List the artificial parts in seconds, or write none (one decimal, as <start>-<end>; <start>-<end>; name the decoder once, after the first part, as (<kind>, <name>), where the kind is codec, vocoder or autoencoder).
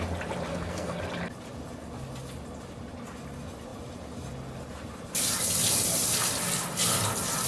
0.5-1.0 (codec, SNAC)